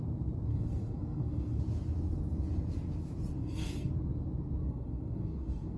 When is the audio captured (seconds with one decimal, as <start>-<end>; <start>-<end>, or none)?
0.0-0.5; 1.6-3.4; 3.9-4.6

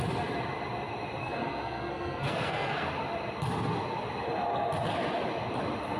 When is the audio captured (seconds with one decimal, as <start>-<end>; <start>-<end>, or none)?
0.0-1.2; 2.9-6.0

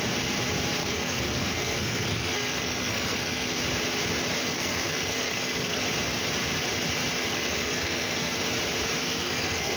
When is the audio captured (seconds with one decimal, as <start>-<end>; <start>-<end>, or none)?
0.0-0.8; 3.6-4.4; 5.8-7.2; 8.4-9.0

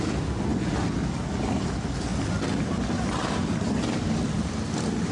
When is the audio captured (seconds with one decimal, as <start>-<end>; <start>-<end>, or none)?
0.0-5.1

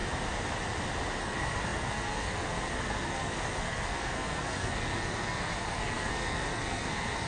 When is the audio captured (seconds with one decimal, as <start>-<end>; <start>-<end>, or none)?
0.0-1.2

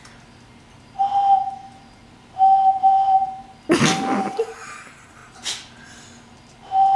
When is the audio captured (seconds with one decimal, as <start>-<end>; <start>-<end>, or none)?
0.0-7.0